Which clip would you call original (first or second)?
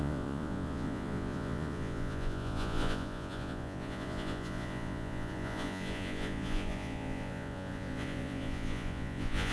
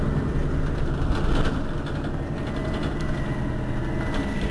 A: second